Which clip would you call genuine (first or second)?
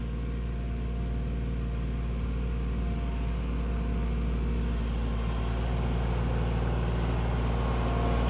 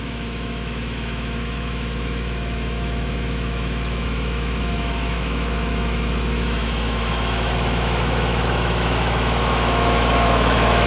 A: first